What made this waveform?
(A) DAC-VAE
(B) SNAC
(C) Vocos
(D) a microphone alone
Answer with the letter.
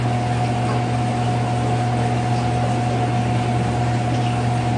D